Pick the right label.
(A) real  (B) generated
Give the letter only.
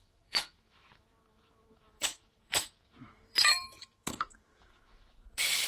B